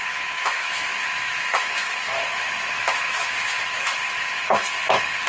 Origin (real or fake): fake